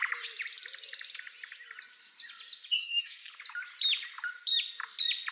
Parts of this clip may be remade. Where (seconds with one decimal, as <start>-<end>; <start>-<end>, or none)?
2.7-3.2